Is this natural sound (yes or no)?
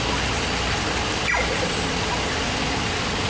yes